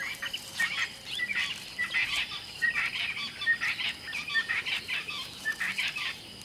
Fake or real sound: fake